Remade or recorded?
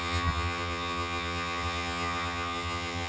remade